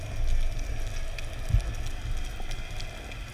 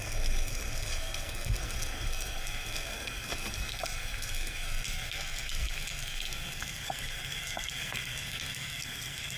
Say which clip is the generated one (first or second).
second